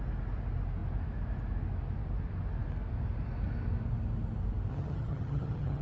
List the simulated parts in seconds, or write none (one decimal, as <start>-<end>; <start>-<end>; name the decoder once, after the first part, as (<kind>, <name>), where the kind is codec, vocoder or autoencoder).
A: 4.7-5.8 (vocoder, HiFi-GAN)